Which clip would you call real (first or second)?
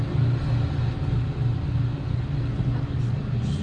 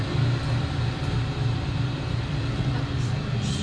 first